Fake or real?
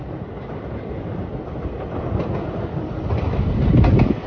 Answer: real